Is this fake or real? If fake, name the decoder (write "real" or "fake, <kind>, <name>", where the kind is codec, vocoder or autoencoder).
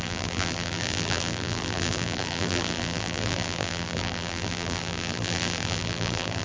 fake, vocoder, BigVGAN v2